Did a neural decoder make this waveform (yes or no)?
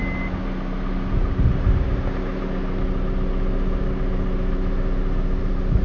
no